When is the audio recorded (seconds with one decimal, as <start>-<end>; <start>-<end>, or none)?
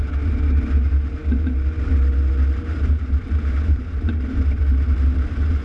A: 0.0-5.6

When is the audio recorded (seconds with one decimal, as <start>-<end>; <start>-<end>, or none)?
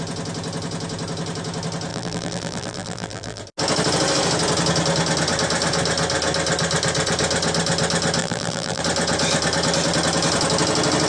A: 0.0-1.9; 3.4-8.2; 8.8-11.1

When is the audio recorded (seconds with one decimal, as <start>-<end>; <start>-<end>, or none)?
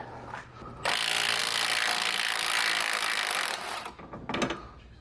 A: 0.0-5.0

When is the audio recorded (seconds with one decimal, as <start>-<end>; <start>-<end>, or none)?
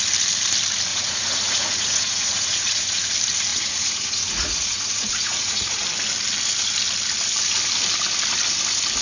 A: 0.0-0.9; 3.1-3.5; 5.9-9.0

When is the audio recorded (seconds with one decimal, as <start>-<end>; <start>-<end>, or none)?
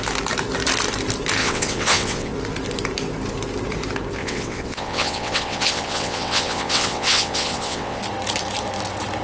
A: 0.0-1.4; 2.3-4.2; 8.0-9.2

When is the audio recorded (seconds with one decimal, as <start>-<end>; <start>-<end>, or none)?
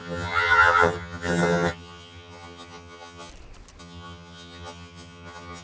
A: 3.3-3.8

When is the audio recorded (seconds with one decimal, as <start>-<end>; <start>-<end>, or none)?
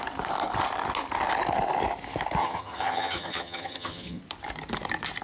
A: 0.0-2.4; 4.2-5.2